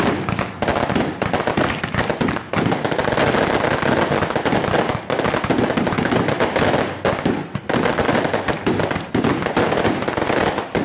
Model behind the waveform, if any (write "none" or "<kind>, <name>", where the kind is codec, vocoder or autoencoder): none